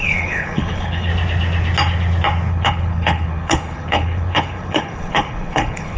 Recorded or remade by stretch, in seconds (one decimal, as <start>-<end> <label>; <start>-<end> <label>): 0.0-1.1 remade; 1.1-2.5 recorded; 2.5-6.0 remade